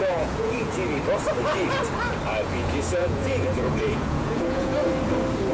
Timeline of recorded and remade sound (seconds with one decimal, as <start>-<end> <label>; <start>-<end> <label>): 0.0-0.8 remade; 0.8-2.4 recorded; 2.4-4.7 remade; 4.7-5.5 recorded